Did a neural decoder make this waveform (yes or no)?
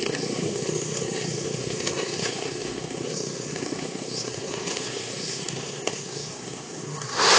yes